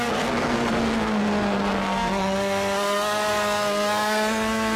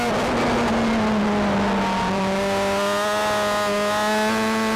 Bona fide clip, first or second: second